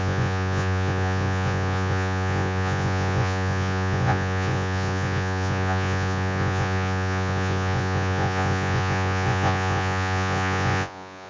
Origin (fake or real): fake